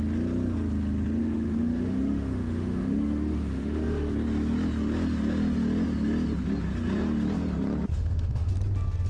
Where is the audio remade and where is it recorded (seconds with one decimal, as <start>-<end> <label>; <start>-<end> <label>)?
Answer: 0.0-1.2 recorded; 1.2-4.1 remade; 4.1-7.9 recorded; 7.9-8.5 remade; 8.5-9.1 recorded